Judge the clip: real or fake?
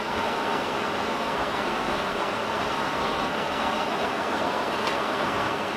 fake